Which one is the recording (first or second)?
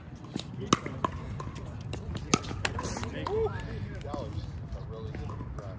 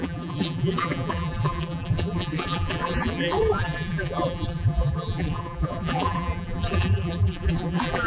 first